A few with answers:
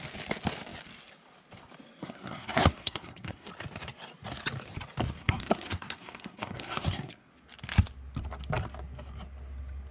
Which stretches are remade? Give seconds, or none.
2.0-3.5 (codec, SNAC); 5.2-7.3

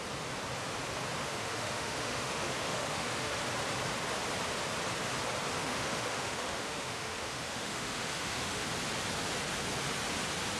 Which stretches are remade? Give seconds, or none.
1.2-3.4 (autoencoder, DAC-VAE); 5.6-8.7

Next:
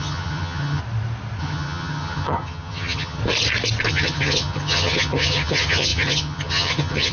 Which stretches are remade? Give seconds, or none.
0.0-0.8 (vocoder, HiFi-GAN); 1.4-3.2; 3.9-7.1

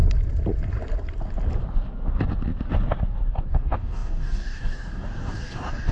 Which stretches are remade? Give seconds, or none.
3.5-5.9 (codec, DAC)

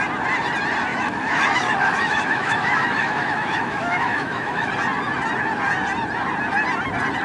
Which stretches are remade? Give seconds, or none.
0.9-4.7 (autoencoder, DAC-VAE)

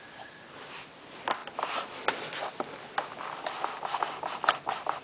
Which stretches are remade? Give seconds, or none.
none